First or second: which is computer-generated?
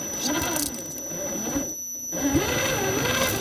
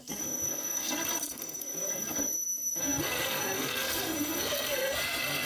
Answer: second